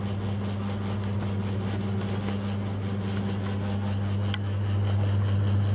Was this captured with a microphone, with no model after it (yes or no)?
yes